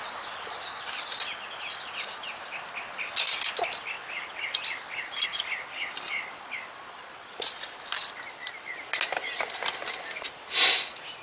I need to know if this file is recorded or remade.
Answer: recorded